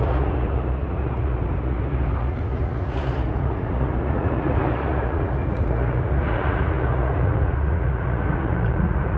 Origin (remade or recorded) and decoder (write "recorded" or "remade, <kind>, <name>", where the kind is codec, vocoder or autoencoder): remade, vocoder, Vocos